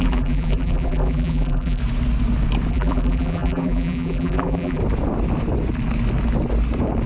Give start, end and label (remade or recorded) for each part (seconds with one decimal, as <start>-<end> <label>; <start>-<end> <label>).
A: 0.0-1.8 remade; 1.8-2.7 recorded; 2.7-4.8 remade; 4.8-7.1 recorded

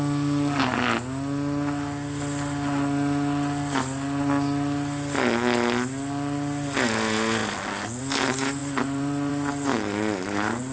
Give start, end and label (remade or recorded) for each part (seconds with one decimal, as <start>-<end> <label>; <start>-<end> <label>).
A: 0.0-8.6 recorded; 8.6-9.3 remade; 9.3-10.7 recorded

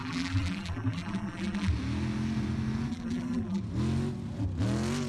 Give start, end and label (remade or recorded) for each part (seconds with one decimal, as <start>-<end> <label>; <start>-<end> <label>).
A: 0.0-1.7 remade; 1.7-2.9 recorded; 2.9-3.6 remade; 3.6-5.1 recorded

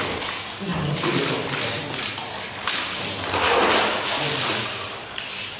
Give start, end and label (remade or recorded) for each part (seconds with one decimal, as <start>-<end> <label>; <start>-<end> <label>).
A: 0.0-2.2 remade; 2.2-5.6 recorded

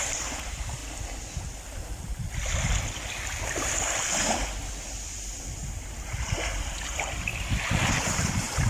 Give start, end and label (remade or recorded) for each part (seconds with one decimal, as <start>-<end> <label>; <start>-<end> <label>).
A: 0.0-0.8 remade; 0.8-5.9 recorded; 5.9-7.3 remade; 7.3-7.9 recorded; 7.9-8.7 remade

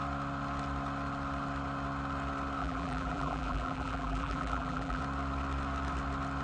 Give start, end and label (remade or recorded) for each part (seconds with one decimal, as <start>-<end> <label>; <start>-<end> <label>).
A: 0.0-2.6 recorded; 2.6-5.0 remade; 5.0-6.4 recorded

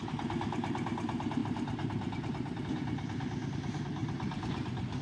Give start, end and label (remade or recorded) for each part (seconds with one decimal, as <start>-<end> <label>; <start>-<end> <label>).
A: 0.0-1.4 recorded; 1.4-2.6 remade; 2.6-4.0 recorded; 4.0-5.0 remade

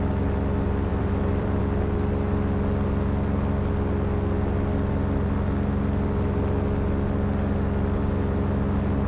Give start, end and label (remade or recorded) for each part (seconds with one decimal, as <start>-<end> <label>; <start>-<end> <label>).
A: 0.0-0.9 recorded; 0.9-1.6 remade; 1.6-9.1 recorded